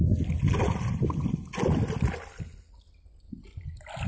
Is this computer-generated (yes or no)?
no